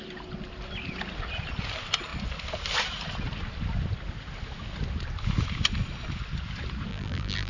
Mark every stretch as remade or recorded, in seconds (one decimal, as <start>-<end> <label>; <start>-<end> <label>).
0.0-6.9 recorded; 6.9-7.5 remade